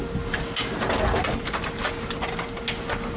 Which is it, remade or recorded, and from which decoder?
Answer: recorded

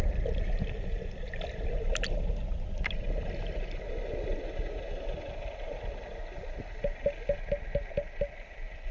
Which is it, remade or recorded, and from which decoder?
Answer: recorded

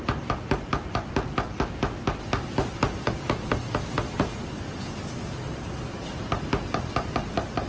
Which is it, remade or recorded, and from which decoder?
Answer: recorded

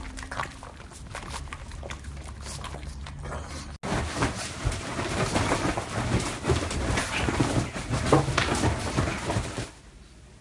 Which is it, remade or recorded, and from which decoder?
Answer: recorded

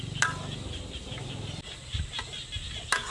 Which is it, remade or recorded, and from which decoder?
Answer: recorded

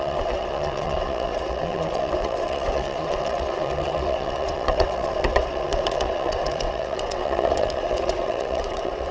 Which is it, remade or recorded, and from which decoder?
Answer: remade, vocoder, WaveNeXt